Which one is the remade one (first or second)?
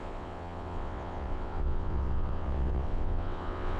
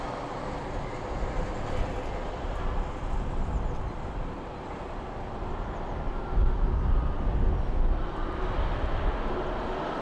first